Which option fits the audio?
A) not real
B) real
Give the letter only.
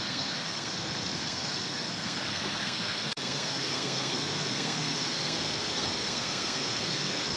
A